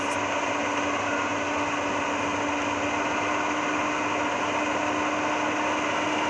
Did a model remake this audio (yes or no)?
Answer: no